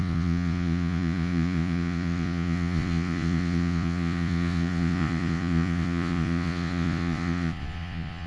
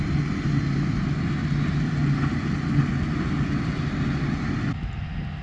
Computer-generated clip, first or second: first